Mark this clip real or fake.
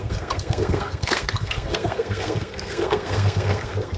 fake